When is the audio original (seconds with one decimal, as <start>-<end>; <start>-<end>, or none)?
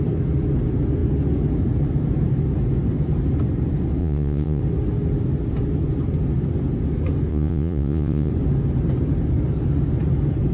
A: 0.0-4.0; 4.6-7.3; 8.3-10.5